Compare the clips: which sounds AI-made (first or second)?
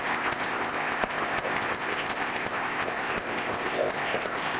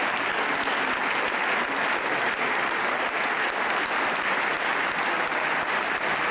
first